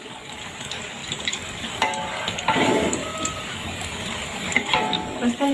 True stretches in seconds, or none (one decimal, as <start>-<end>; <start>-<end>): none